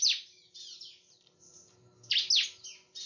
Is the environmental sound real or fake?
real